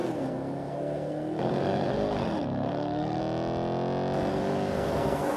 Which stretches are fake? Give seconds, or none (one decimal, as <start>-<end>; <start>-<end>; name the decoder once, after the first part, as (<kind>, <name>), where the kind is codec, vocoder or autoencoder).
0.0-3.2 (codec, SNAC); 4.3-5.4